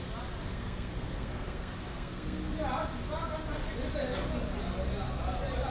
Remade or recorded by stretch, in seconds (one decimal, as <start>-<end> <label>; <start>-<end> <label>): 0.0-0.5 recorded; 0.5-2.4 remade; 2.4-5.7 recorded